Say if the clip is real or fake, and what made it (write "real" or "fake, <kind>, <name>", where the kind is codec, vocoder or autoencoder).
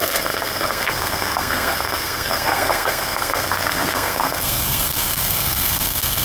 fake, codec, SNAC